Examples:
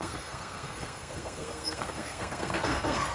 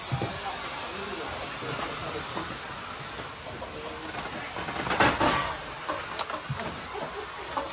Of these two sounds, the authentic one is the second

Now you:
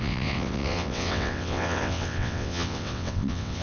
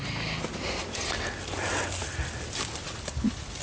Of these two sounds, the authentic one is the second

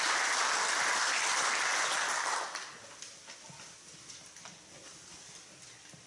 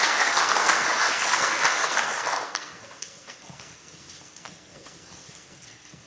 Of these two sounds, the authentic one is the first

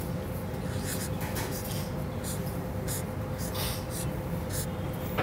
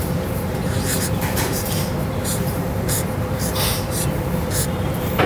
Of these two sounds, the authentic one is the first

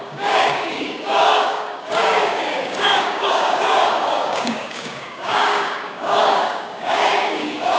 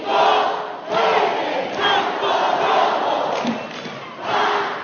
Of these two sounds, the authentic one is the second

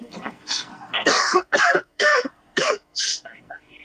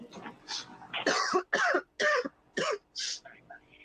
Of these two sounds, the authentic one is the second